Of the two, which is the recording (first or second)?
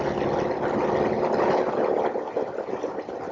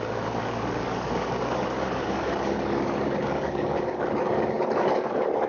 first